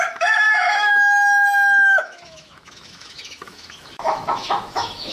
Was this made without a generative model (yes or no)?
no